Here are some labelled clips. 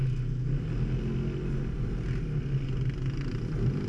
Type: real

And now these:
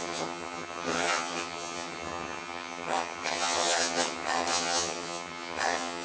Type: fake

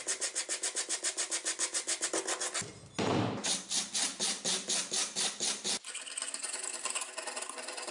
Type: real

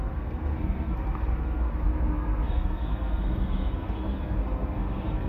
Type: fake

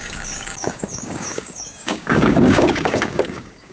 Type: fake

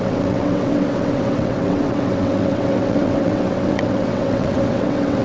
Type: fake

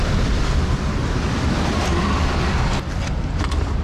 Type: real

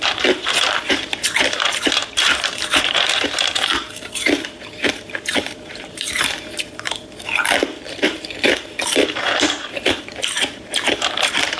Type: fake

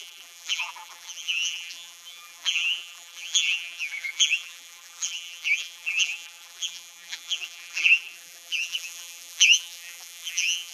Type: fake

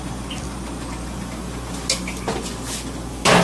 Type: real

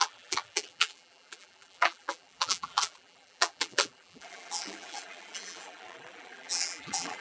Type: fake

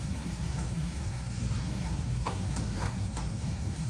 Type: fake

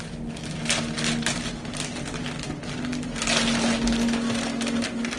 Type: real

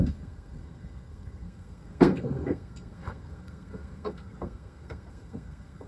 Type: fake